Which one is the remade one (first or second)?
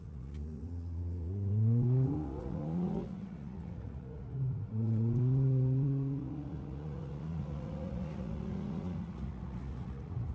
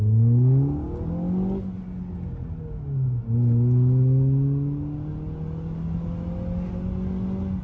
first